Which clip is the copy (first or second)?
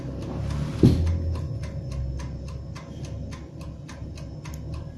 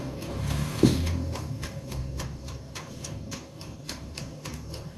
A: second